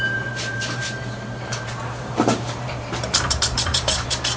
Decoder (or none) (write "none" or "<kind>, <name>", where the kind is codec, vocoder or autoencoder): vocoder, BigVGAN v2